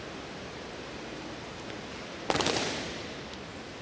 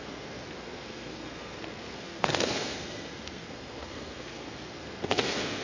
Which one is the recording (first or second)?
first